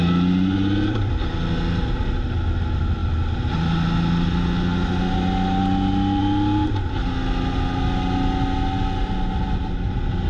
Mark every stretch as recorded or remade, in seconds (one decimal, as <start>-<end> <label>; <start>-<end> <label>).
0.0-10.3 recorded